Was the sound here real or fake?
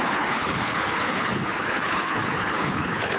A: fake